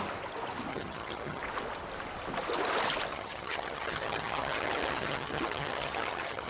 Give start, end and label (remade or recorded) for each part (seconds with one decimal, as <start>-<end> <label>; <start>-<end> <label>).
0.0-0.7 recorded; 0.7-1.4 remade; 1.4-3.1 recorded; 3.1-6.5 remade